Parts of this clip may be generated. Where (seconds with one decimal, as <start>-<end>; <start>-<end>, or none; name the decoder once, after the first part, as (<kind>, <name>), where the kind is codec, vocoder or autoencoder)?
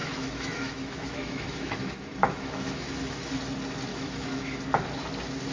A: 0.0-3.3 (autoencoder, DAC-VAE); 3.9-4.6